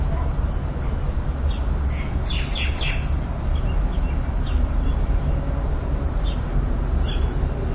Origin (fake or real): real